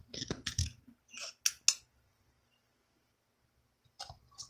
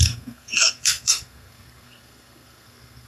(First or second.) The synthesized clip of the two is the second